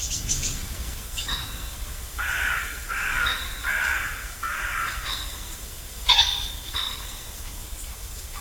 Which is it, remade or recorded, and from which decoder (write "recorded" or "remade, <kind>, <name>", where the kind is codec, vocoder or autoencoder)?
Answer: remade, codec, SNAC